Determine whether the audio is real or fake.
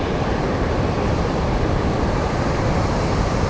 fake